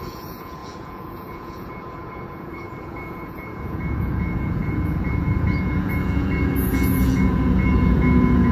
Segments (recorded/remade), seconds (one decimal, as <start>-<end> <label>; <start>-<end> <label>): 0.0-8.5 remade

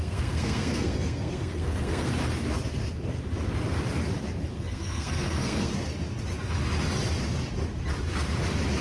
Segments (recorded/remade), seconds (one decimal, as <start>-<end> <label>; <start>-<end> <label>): 0.0-2.1 remade; 2.1-4.5 recorded; 4.5-5.7 remade; 5.7-8.8 recorded

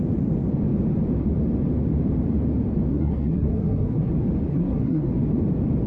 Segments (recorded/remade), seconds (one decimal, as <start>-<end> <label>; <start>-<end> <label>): 0.0-2.9 recorded; 2.9-4.1 remade; 4.1-4.5 recorded; 4.5-5.1 remade; 5.1-5.9 recorded